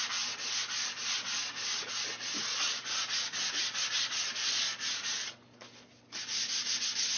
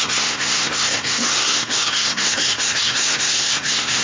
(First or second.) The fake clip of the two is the second